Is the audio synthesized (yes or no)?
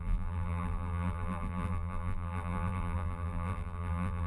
yes